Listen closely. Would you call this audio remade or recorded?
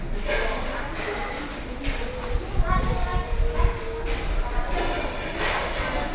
recorded